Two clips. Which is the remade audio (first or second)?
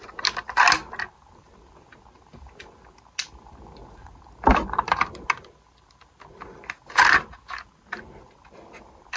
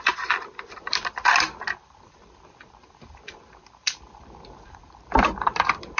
second